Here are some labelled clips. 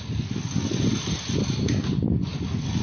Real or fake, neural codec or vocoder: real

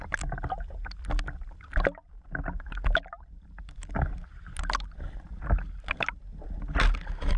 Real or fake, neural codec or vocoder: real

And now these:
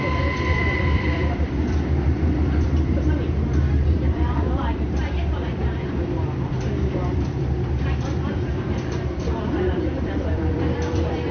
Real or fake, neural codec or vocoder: fake, vocoder, BigVGAN v2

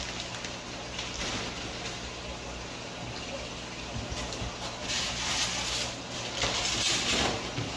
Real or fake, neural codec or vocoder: real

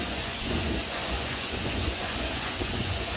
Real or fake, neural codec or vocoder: fake, vocoder, Vocos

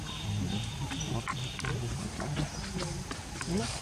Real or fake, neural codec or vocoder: real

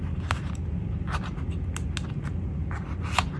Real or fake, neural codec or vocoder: real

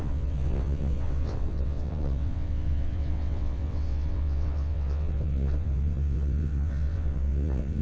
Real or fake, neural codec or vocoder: fake, vocoder, WaveNeXt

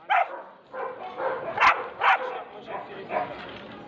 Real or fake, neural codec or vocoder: real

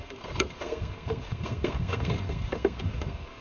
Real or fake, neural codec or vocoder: fake, codec, SNAC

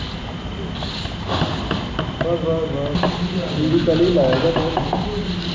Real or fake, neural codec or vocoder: real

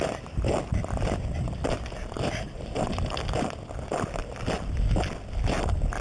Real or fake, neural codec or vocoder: real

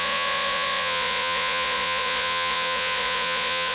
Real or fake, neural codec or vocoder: fake, vocoder, Vocos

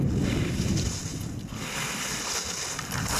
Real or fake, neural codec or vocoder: real